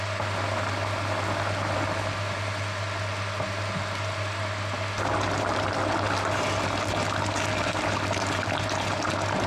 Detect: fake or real real